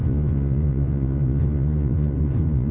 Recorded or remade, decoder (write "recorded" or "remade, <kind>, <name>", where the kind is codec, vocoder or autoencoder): remade, vocoder, Vocos